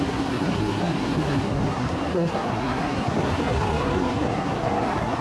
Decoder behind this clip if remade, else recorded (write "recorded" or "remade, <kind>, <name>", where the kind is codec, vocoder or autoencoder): remade, codec, SNAC